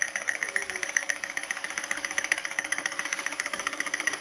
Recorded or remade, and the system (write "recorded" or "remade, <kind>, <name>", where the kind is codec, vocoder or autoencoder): remade, codec, DAC